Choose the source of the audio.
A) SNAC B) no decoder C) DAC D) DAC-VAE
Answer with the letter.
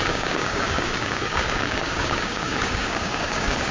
C